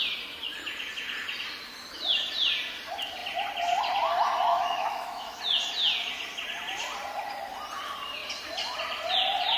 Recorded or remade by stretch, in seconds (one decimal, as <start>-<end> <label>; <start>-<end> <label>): 0.0-4.5 recorded; 4.5-5.4 remade; 5.4-9.6 recorded